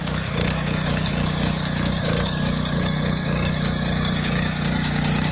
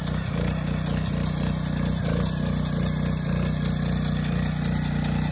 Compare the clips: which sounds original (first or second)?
second